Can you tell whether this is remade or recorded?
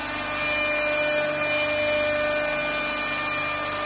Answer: recorded